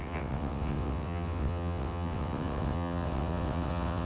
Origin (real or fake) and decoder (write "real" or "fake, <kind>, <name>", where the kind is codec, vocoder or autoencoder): fake, vocoder, WaveNeXt